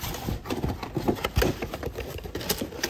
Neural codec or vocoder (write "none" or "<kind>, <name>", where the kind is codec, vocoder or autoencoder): none